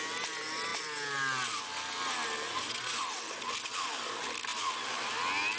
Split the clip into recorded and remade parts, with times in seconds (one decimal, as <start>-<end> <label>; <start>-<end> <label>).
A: 0.0-2.5 recorded; 2.5-3.0 remade; 3.0-5.6 recorded